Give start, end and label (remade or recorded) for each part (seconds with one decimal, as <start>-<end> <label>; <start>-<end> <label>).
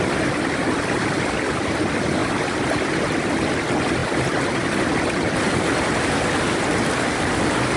0.0-7.8 recorded